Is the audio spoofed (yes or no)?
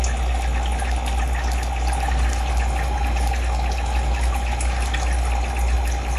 no